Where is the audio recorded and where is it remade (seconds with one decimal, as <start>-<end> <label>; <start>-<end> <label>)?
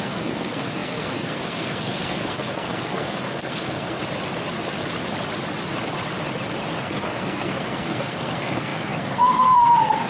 0.0-4.0 remade; 4.0-6.8 recorded; 6.8-10.1 remade